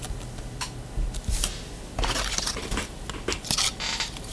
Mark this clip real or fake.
real